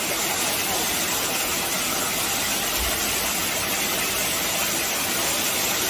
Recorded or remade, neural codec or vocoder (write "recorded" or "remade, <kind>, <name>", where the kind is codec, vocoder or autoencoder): recorded